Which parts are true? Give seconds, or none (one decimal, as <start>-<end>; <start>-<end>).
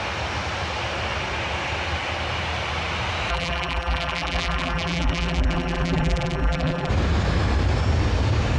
0.0-3.3; 6.9-8.6